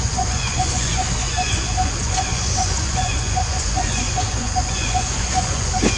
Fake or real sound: fake